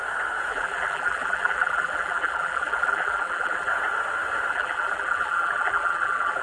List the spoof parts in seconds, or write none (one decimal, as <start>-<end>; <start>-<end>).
0.5-3.7; 4.5-6.4